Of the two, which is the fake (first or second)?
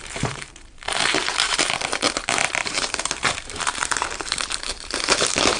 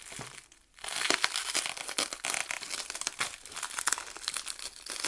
first